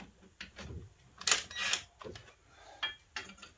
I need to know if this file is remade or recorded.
recorded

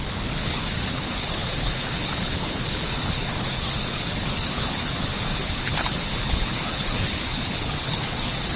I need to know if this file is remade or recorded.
remade